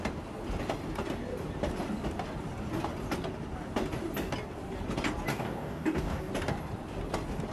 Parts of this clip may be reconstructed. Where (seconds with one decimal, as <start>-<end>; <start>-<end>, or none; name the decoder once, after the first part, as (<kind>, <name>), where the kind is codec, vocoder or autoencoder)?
5.3-6.3 (codec, DAC)